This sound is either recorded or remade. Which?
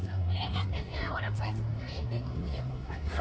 remade